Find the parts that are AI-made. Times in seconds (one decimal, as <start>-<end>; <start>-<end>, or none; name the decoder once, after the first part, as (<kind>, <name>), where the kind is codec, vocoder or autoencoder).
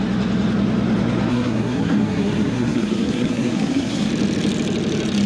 1.3-4.1 (codec, SNAC)